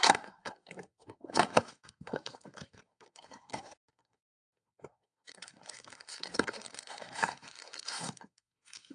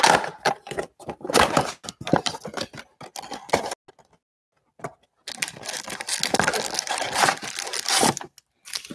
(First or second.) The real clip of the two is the second